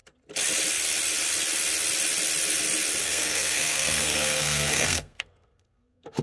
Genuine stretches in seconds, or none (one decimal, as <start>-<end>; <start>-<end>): 0.0-3.0